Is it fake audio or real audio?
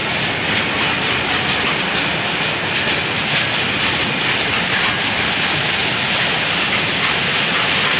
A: real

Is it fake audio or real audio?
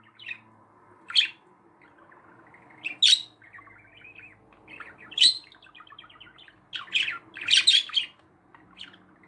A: real